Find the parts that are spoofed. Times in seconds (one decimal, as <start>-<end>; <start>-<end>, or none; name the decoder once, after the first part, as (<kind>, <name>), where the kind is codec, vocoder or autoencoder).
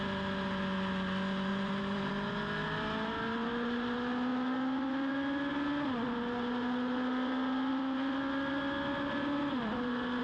1.5-2.1 (vocoder, BigVGAN v2)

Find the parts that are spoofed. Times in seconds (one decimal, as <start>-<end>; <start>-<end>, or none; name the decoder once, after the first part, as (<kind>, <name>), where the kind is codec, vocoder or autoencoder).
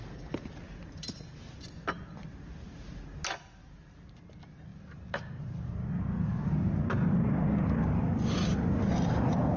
none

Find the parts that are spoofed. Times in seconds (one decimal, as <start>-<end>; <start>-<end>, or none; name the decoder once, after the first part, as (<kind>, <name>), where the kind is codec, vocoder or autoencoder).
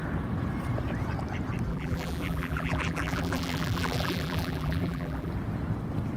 1.7-5.3 (vocoder, BigVGAN v2)